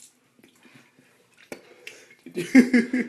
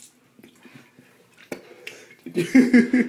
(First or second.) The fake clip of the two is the first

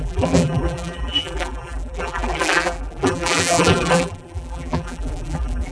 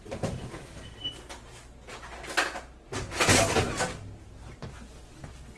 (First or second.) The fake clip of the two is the first